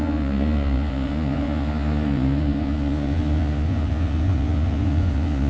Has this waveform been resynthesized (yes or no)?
yes